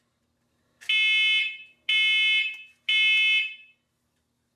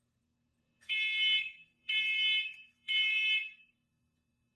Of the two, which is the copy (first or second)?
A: second